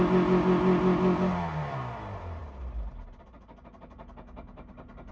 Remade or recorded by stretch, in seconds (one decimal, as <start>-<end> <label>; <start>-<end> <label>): 0.0-5.1 recorded